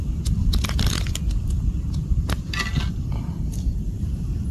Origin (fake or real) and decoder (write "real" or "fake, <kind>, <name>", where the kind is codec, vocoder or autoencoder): real